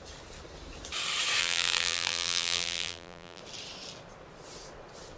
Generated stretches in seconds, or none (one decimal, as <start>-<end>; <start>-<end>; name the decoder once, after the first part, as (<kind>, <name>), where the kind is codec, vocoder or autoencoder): 1.4-3.4 (vocoder, BigVGAN v2)